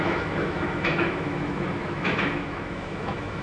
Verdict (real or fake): fake